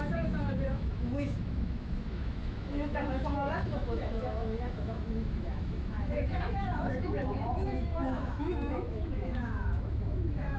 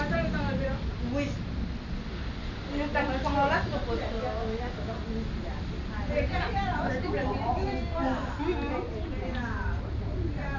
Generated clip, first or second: first